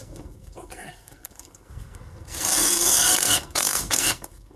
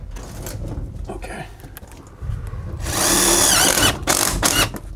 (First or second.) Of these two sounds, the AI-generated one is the first